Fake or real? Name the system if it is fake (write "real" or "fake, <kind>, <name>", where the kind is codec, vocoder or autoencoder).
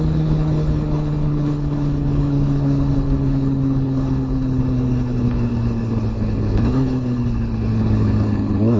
fake, codec, HILCodec